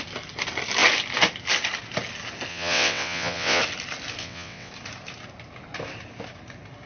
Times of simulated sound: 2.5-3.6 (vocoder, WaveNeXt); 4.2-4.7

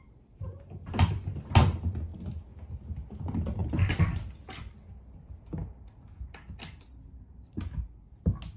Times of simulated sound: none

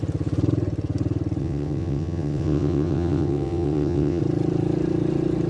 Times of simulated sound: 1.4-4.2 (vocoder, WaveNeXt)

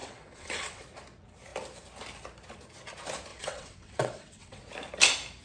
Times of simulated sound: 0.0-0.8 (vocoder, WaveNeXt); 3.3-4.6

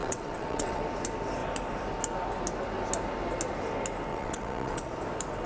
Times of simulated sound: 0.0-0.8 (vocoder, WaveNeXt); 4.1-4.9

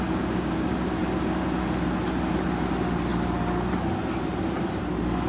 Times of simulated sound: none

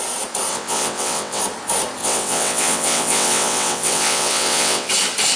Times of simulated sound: 0.5-1.4 (vocoder, WaveNeXt); 2.0-4.9

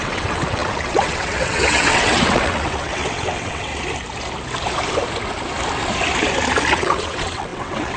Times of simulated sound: 0.0-3.7 (vocoder, WaveNeXt); 6.7-8.0